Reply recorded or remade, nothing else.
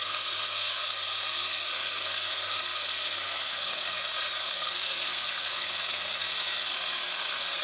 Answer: remade